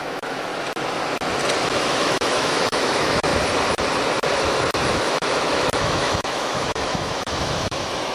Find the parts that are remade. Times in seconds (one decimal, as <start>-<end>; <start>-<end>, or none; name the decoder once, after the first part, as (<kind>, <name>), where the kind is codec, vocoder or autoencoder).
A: 0.0-0.5 (autoencoder, DAC-VAE); 1.7-3.3; 4.9-8.1